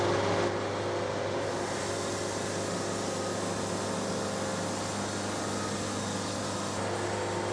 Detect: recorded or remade recorded